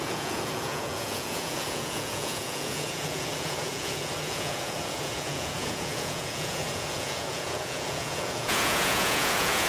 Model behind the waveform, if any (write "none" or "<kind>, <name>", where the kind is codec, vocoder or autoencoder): vocoder, Vocos